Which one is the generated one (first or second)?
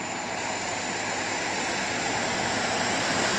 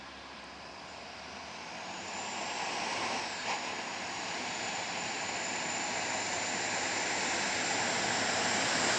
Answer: second